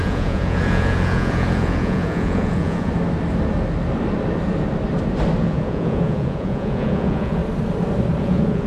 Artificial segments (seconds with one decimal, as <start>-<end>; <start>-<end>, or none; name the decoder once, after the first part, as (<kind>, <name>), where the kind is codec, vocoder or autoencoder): 0.0-2.9 (vocoder, Vocos); 5.4-7.4; 8.2-8.7